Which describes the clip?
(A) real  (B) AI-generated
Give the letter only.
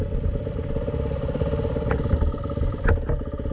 A